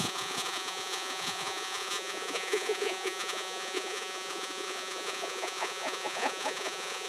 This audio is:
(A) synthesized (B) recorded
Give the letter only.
A